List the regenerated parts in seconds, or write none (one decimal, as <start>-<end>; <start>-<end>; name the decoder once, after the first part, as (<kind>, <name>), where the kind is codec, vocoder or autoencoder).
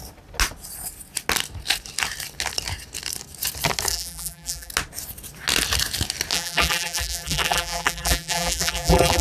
3.9-4.7 (vocoder, BigVGAN v2); 6.3-9.2